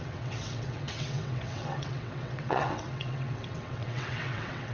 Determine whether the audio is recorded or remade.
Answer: remade